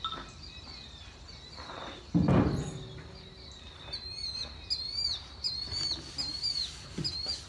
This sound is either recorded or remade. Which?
recorded